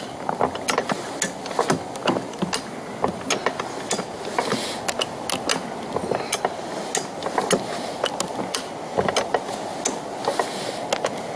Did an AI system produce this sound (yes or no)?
no